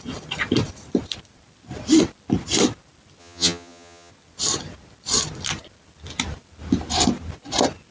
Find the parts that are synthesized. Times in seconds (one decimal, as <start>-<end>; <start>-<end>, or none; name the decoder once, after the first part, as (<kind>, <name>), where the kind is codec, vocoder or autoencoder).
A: 3.2-4.1 (vocoder, HiFi-GAN)